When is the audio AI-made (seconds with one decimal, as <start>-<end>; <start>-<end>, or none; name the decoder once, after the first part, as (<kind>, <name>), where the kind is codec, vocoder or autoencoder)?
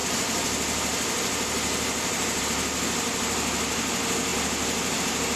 none